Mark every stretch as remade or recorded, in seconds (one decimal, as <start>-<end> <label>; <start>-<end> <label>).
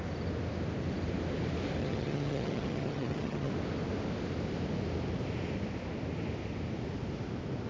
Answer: 0.0-1.8 recorded; 1.8-3.5 remade; 3.5-7.7 recorded